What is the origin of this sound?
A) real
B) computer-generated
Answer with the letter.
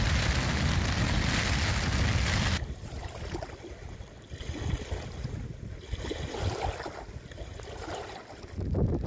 A